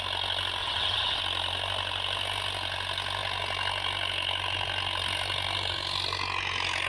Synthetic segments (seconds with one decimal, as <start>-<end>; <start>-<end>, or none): 0.6-1.2